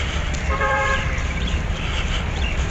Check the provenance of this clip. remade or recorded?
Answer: remade